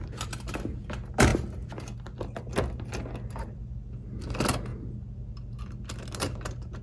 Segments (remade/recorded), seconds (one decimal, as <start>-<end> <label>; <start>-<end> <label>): 0.0-6.8 recorded